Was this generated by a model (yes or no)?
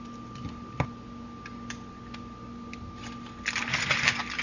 no